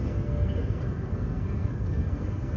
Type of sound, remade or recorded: remade